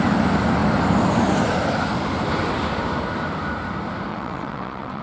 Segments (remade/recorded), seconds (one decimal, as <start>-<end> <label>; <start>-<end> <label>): 0.0-4.1 recorded; 4.1-5.0 remade